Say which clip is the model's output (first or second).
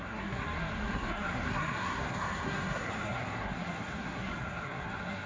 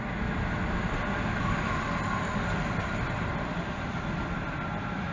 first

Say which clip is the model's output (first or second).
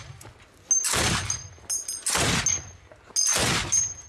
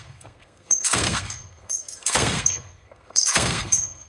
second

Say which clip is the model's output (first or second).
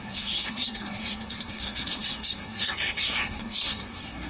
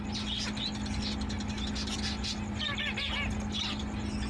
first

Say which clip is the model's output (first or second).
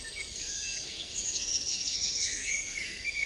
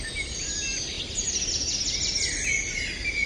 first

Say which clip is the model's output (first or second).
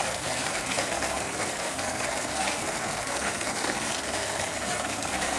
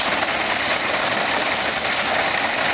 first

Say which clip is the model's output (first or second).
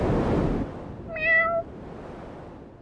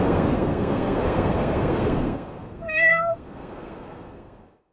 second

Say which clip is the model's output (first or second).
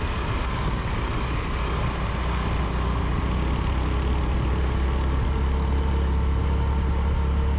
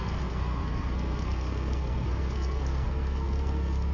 second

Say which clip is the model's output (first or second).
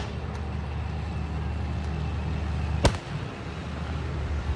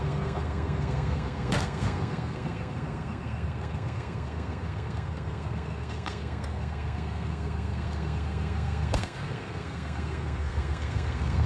second